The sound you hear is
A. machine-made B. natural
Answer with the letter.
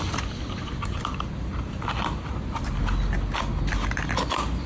B